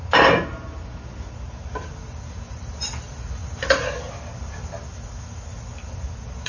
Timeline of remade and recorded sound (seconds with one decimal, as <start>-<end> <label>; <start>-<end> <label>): 0.0-6.5 recorded